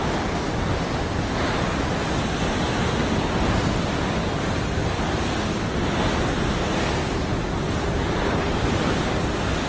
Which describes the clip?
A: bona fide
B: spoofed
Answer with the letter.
A